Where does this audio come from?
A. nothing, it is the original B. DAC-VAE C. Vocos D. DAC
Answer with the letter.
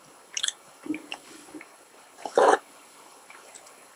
D